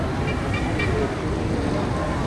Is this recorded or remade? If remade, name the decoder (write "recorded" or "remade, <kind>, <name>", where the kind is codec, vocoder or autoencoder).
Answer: recorded